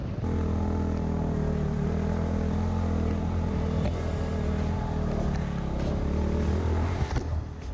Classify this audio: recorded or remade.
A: recorded